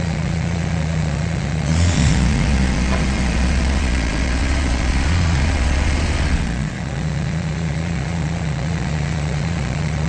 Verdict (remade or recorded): remade